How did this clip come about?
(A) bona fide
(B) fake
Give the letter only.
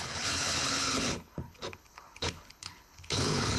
B